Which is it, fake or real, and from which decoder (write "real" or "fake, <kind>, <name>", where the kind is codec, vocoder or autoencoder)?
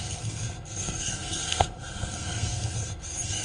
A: fake, codec, SNAC